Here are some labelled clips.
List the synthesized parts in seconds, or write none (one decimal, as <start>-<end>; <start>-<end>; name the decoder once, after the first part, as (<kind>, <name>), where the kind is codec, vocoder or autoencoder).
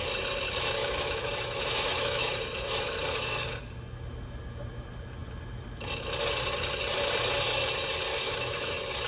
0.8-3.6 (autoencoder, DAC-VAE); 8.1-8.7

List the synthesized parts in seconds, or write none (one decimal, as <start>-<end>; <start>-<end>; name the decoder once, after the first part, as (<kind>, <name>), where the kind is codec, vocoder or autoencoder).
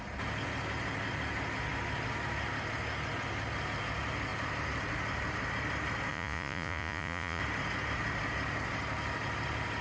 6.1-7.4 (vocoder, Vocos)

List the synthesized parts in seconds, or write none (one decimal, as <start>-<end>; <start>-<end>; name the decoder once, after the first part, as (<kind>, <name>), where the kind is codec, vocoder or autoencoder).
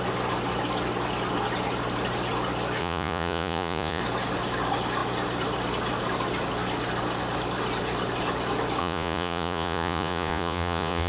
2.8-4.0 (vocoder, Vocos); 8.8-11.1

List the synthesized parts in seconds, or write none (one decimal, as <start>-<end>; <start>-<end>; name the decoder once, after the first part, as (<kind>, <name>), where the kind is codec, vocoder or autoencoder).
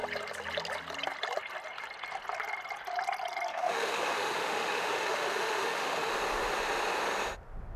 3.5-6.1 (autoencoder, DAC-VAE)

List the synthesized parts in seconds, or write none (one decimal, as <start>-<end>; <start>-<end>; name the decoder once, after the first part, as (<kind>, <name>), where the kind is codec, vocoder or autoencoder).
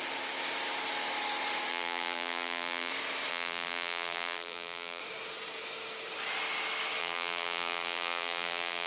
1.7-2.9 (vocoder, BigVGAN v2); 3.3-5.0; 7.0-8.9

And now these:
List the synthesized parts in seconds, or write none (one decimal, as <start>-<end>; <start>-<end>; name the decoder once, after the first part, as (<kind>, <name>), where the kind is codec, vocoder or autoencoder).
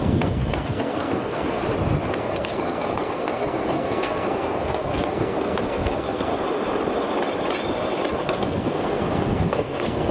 0.0-1.6 (codec, SNAC); 2.1-6.3; 8.1-10.1